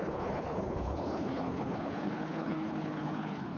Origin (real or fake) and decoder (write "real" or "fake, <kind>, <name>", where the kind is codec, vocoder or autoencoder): fake, codec, HILCodec